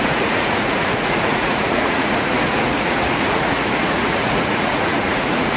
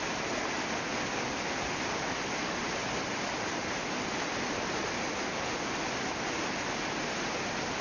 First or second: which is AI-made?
first